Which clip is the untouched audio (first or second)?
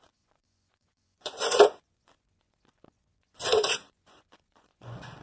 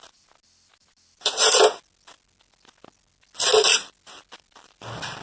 second